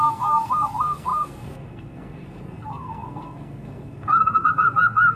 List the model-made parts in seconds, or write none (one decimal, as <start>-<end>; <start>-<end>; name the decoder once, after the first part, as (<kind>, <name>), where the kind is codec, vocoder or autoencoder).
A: 0.0-5.2 (codec, SNAC)